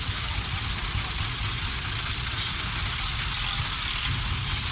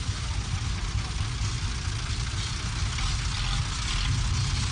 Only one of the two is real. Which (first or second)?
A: second